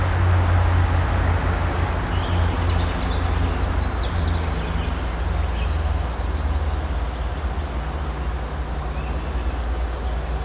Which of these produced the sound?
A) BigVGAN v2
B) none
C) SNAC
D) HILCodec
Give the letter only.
B